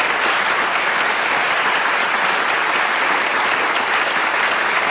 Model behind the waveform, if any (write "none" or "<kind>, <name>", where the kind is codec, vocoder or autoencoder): none